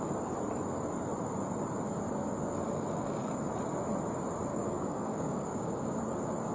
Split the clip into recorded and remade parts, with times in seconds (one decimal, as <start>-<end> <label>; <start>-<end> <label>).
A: 0.0-4.5 recorded; 4.5-6.0 remade; 6.0-6.5 recorded